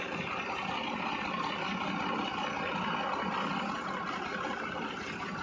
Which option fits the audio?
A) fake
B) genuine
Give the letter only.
B